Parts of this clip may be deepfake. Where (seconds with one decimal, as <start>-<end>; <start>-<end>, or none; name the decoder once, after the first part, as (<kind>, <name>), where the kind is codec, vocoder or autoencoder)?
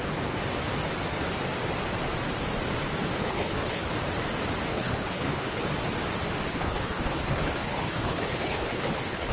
3.2-3.9 (codec, HILCodec); 4.7-5.6; 6.5-9.3